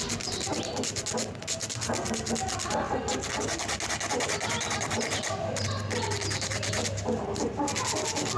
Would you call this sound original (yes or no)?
yes